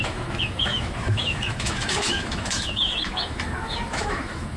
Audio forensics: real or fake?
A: fake